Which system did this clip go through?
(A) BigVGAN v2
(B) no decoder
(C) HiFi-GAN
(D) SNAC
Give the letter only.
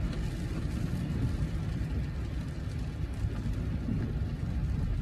B